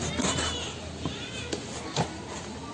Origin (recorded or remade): recorded